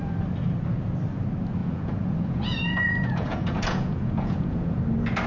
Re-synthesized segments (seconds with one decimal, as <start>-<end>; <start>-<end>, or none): 1.6-4.8